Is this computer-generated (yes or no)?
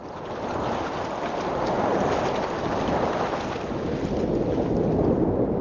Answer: no